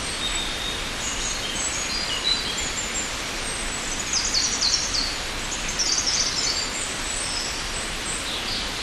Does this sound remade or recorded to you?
remade